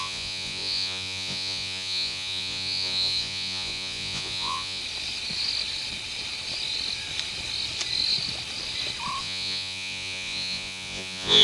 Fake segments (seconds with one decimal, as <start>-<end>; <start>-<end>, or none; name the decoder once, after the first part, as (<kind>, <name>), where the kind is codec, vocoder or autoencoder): 0.0-4.8 (vocoder, Vocos); 9.2-11.4